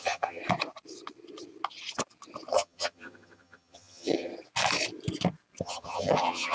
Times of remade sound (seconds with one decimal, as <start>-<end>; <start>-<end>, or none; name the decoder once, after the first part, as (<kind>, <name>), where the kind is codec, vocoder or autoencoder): 0.0-0.4 (vocoder, HiFi-GAN); 2.5-4.3; 5.6-6.5